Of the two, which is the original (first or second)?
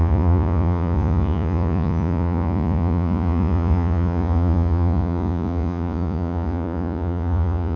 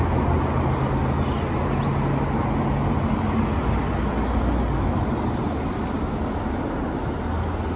second